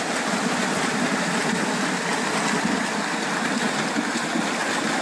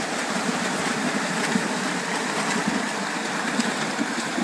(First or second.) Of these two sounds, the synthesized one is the second